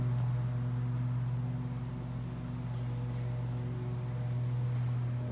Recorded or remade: recorded